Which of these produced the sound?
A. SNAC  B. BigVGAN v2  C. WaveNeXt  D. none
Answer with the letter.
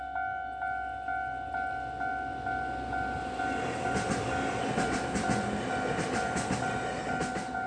D